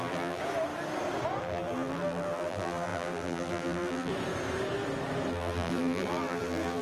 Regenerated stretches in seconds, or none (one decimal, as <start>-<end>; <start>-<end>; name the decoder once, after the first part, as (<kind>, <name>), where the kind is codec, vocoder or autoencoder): 0.0-0.4 (vocoder, BigVGAN v2); 1.4-4.1; 5.3-6.8